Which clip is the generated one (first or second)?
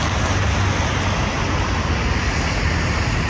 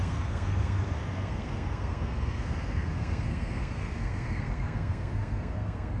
second